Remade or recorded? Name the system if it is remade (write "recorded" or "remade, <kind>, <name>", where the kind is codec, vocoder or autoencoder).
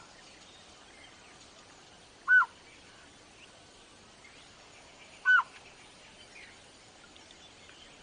recorded